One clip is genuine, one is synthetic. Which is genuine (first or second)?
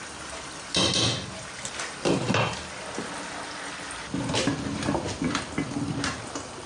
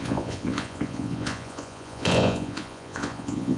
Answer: first